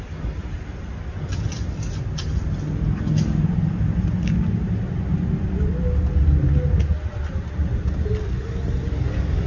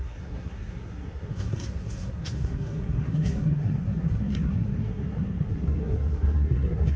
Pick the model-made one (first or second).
second